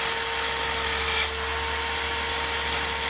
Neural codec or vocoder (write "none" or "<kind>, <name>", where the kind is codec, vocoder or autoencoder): none